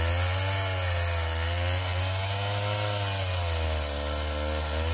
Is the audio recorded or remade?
recorded